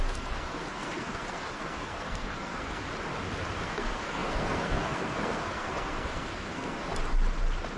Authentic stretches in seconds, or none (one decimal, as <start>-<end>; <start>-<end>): 2.9-3.6; 6.9-7.8